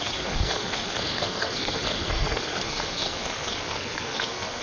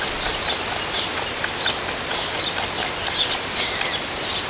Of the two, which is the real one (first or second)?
second